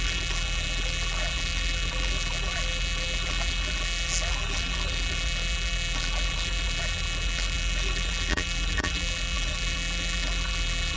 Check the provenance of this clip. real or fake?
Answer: fake